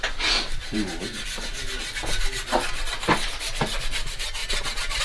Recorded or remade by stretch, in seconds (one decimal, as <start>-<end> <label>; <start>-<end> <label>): 0.0-5.0 recorded